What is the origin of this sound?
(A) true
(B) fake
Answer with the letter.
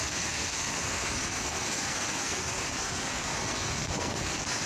B